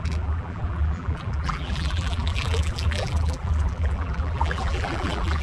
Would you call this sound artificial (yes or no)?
yes